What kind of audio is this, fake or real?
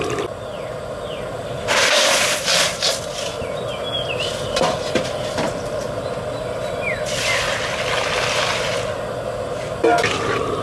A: real